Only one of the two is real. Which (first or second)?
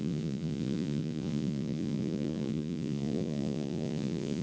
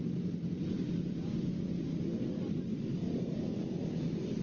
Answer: second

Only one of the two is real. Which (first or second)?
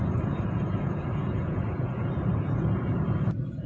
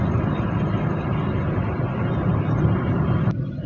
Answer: second